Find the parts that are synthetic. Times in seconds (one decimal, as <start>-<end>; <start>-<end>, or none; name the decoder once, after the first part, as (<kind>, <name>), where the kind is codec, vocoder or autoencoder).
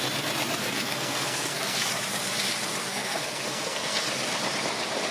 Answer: 0.6-1.9 (codec, SNAC); 2.8-4.0